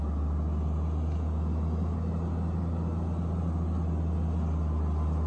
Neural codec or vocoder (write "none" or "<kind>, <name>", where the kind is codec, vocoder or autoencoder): none